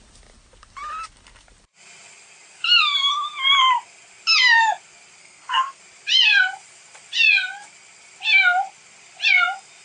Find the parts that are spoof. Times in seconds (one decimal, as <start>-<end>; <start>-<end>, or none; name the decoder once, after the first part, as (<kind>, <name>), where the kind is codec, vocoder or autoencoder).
5.2-5.8 (codec, SNAC)